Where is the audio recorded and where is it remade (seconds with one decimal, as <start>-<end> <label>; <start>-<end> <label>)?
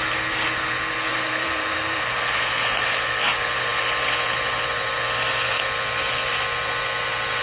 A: 0.0-1.1 recorded; 1.1-2.1 remade; 2.1-7.4 recorded